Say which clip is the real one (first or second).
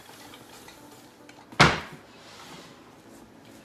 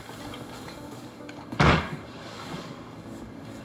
first